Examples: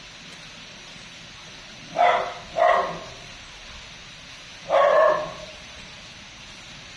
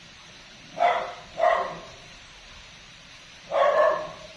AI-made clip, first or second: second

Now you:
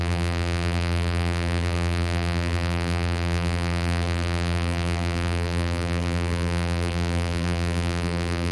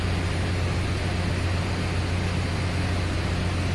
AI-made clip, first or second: first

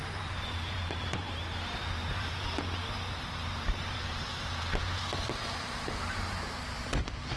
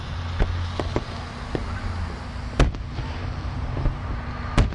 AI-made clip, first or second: first